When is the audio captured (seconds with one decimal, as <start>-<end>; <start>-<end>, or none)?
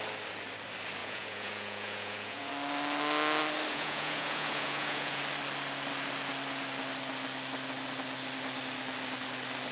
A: 0.0-1.0; 2.5-3.7; 5.2-9.7